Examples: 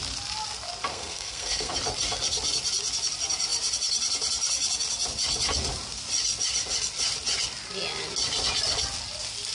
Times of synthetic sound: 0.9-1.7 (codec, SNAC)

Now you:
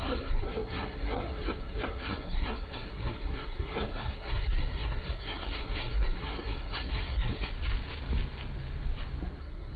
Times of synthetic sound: 0.0-7.5 (codec, SNAC); 9.4-9.8